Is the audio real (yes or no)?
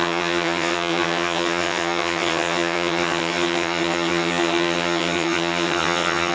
no